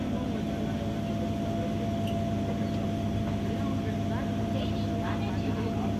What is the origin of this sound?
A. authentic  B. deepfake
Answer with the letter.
A